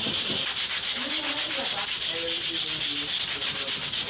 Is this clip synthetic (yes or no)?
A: no